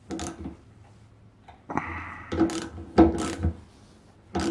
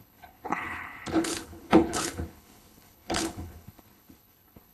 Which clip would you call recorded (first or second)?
first